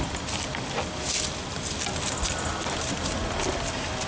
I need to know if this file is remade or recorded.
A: recorded